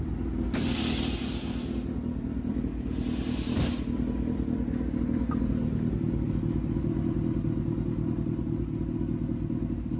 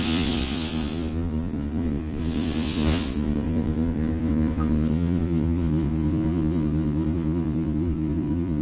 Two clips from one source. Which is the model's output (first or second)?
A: second